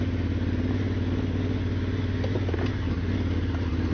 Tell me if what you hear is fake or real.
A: real